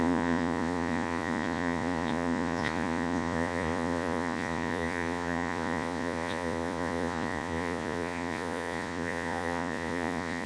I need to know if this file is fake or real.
fake